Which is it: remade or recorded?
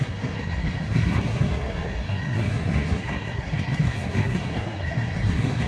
remade